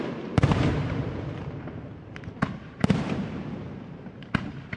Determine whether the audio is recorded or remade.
remade